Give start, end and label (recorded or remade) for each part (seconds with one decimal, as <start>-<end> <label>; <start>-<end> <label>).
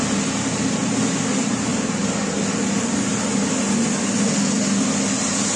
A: 0.0-5.6 recorded